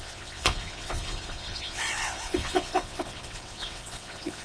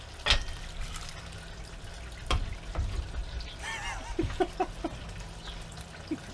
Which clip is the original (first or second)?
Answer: second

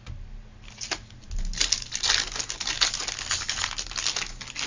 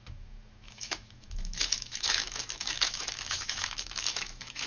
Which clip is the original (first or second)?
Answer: first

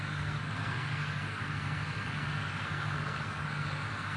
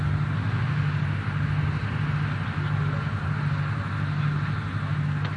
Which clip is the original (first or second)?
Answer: second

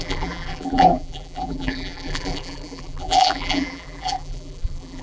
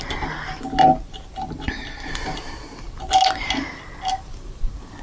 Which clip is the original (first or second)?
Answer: second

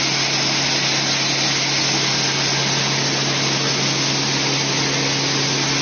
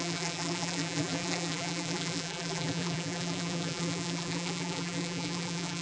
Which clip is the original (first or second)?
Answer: first